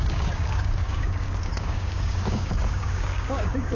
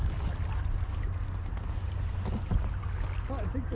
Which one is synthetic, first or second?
first